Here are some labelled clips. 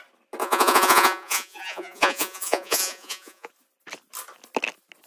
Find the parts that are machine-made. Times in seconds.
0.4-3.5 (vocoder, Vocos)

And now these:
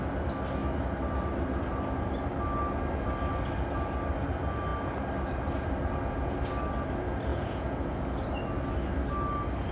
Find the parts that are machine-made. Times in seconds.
7.3-8.1 (vocoder, Vocos)

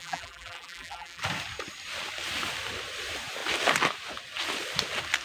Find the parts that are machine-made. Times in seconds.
0.0-1.2 (vocoder, BigVGAN v2)

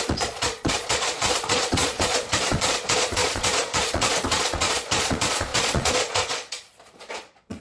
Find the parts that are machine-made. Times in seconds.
0.0-7.6 (vocoder, Vocos)

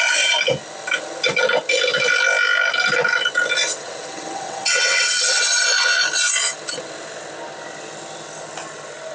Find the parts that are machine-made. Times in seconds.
3.7-5.4 (vocoder, WaveNeXt)

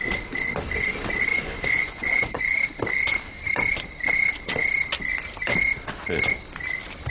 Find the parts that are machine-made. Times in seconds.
1.3-2.4 (vocoder, Vocos)

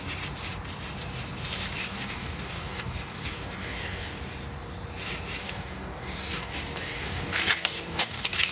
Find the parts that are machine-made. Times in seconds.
1.8-4.2 (codec, DAC); 5.4-8.5

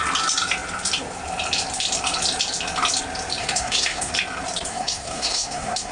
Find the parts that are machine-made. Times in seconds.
3.4-4.1 (codec, SNAC); 4.7-5.9